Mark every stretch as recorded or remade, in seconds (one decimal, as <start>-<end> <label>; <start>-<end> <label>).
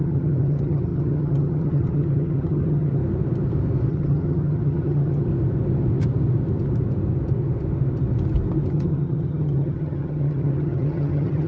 0.0-3.0 remade; 3.0-3.9 recorded; 3.9-5.3 remade; 5.3-8.7 recorded; 8.7-11.5 remade